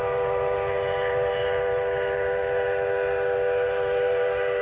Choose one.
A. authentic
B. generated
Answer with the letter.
A